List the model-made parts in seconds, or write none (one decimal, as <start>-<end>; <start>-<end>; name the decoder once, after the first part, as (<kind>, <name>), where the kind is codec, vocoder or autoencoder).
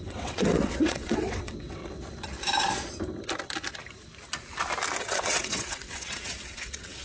0.0-1.8 (vocoder, WaveNeXt); 5.0-7.0